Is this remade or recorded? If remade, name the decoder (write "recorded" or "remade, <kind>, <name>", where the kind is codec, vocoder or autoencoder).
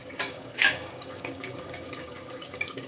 remade, codec, DAC